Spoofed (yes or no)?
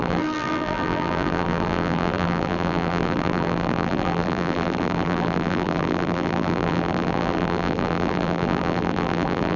yes